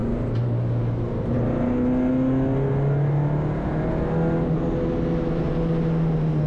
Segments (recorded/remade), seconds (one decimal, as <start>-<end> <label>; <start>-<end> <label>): 0.0-6.5 recorded